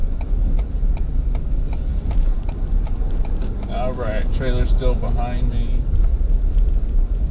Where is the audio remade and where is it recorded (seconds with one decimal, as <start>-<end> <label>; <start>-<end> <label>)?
0.0-7.3 recorded